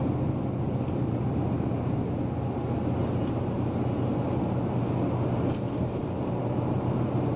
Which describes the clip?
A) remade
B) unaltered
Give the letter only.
B